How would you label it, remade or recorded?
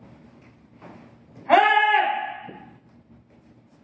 recorded